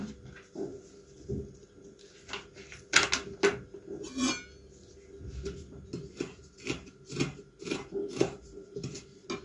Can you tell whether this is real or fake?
real